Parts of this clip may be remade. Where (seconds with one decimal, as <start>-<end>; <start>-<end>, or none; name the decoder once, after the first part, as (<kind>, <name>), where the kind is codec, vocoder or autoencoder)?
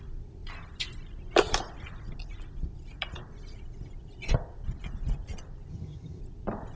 5.7-6.2 (vocoder, HiFi-GAN)